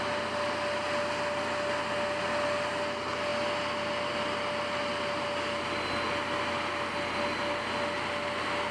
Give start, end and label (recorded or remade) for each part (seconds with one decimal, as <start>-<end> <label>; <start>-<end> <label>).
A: 0.0-8.7 recorded